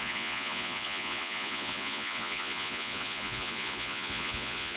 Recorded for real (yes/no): no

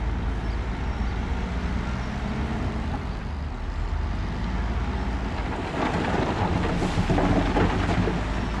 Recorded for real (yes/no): yes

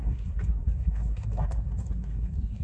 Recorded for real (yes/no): no